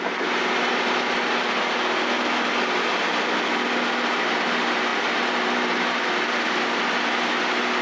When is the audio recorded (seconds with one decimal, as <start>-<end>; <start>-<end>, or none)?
0.0-7.8